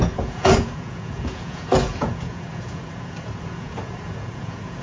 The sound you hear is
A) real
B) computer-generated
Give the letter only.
B